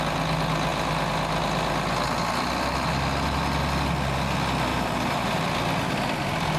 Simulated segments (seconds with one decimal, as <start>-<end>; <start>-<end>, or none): 4.7-5.4